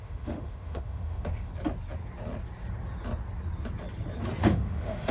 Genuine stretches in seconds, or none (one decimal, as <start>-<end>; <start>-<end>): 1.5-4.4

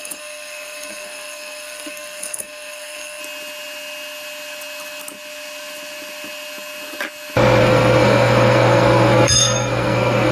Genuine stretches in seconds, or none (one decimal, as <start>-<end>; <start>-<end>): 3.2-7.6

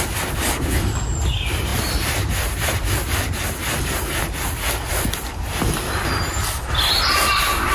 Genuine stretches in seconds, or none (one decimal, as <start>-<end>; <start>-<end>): 0.0-7.7

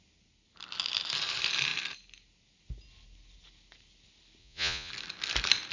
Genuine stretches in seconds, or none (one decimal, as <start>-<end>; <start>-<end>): 0.0-4.4; 4.9-5.7

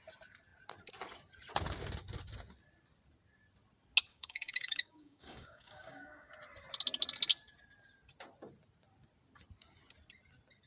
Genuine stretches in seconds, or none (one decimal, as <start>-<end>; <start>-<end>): 0.0-4.1; 6.3-10.7

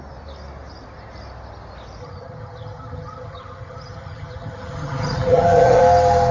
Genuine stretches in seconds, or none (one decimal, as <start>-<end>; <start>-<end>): 0.0-2.0; 5.8-6.3

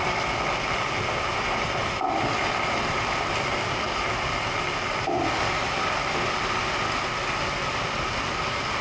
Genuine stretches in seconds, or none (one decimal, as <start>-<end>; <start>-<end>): 0.0-8.8

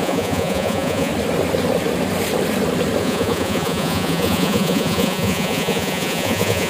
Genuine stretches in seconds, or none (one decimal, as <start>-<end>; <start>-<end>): 1.1-3.0